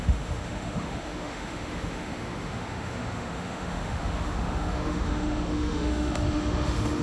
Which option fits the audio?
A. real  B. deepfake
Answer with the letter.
B